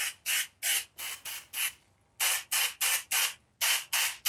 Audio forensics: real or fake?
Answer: real